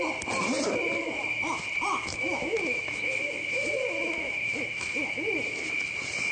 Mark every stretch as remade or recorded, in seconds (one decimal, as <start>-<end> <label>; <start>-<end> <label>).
0.0-1.9 recorded; 1.9-5.7 remade; 5.7-6.3 recorded